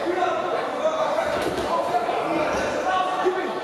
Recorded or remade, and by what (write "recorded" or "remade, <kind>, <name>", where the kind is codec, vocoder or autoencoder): remade, vocoder, BigVGAN v2